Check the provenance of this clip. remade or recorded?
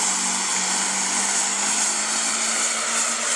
recorded